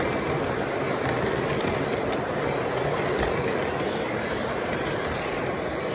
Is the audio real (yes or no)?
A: no